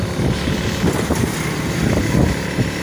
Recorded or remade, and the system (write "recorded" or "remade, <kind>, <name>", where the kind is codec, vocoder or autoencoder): recorded